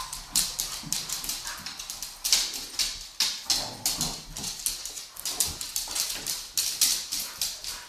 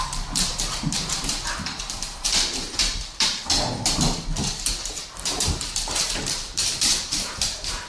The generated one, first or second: second